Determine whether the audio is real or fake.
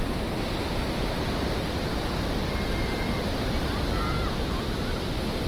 real